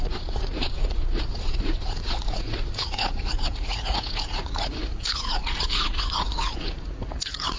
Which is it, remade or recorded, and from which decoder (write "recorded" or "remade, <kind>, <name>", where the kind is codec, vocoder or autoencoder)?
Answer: remade, vocoder, Vocos